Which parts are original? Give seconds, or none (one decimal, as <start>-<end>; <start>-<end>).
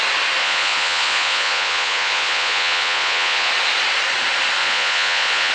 0.0-0.4; 3.5-4.6